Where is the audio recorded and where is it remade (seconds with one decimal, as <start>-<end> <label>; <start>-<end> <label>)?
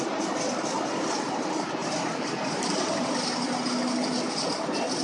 0.0-5.0 recorded